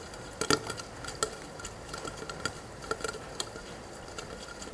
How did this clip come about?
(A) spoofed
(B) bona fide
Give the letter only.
B